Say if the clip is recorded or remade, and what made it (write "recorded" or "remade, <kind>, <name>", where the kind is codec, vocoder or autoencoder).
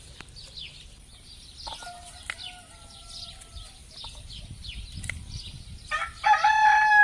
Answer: recorded